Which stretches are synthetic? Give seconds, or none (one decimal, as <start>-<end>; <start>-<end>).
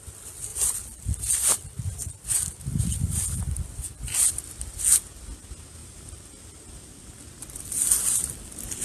2.7-4.4; 5.8-7.2